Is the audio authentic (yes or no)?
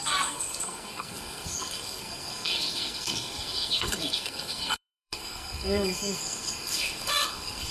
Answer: no